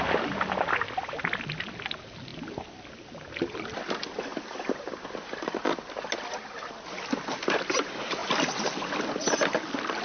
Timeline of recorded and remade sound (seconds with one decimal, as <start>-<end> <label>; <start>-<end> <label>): 0.0-10.0 recorded